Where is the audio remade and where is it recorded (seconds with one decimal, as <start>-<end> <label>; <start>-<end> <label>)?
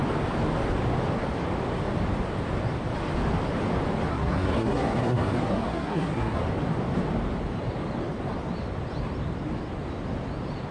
0.0-4.1 recorded; 4.1-6.4 remade; 6.4-10.7 recorded